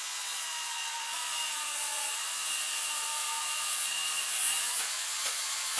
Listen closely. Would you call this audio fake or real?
fake